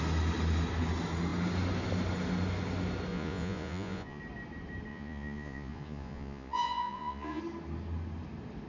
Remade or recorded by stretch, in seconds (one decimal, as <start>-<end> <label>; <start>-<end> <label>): 0.0-3.1 recorded; 3.1-4.2 remade; 4.2-4.9 recorded; 4.9-7.4 remade; 7.4-8.7 recorded